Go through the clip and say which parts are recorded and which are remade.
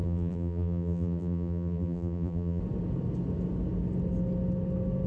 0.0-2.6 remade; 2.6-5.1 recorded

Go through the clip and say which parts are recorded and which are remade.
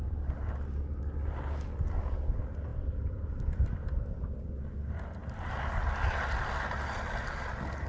0.0-2.7 recorded; 2.7-4.4 remade; 4.4-7.9 recorded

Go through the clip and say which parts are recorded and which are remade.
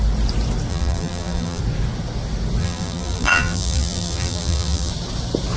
0.0-0.7 recorded; 0.7-1.6 remade; 1.6-2.6 recorded; 2.6-4.9 remade; 4.9-5.6 recorded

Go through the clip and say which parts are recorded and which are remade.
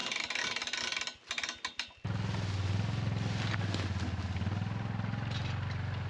0.0-6.1 recorded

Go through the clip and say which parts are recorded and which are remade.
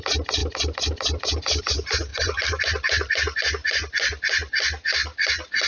0.0-0.4 recorded; 0.4-1.6 remade; 1.6-2.1 recorded; 2.1-2.6 remade; 2.6-5.7 recorded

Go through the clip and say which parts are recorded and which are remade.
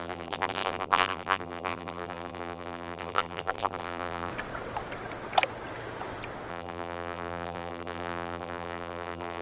0.0-4.3 remade; 4.3-6.5 recorded; 6.5-9.4 remade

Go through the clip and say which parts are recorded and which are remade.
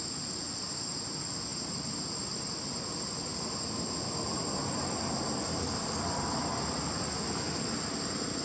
0.0-8.4 recorded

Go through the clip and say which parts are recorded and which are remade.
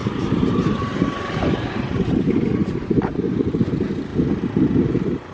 0.0-4.1 remade; 4.1-4.8 recorded; 4.8-5.3 remade